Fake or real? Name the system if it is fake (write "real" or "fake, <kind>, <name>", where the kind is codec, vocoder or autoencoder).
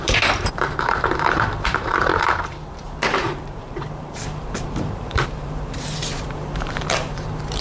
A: fake, vocoder, BigVGAN v2